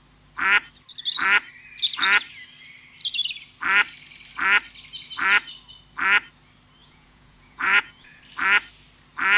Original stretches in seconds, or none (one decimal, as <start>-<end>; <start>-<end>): 0.0-6.8; 8.2-9.4